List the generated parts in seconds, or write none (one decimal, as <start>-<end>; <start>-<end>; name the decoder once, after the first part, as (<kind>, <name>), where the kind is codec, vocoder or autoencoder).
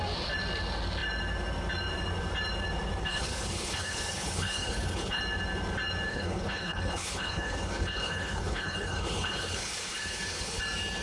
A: 3.0-5.2 (codec, HILCodec); 6.1-10.6